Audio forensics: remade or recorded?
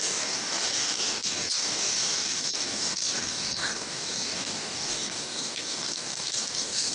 remade